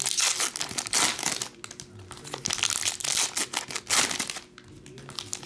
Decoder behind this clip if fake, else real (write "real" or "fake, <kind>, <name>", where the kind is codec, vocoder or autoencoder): real